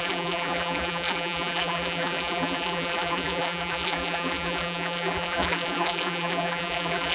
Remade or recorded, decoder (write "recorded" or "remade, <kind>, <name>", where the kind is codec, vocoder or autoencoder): remade, vocoder, BigVGAN v2